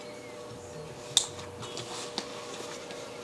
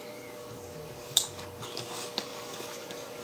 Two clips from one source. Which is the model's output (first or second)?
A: second